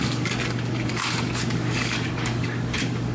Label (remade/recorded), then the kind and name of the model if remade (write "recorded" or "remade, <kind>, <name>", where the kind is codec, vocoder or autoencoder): remade, codec, DAC